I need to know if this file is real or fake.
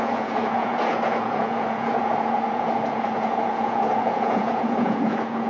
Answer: fake